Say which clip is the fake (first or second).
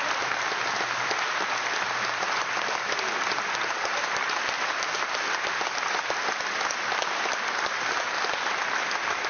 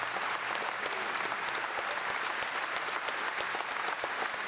first